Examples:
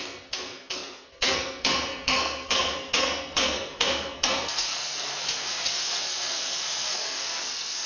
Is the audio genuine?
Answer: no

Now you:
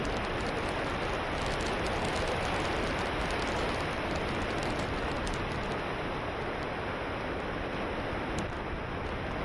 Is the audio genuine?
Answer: yes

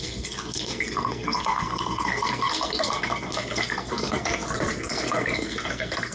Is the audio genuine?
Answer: no